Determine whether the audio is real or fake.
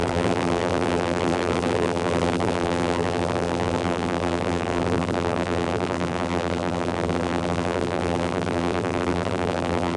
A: fake